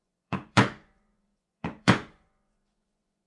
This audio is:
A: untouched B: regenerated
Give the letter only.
B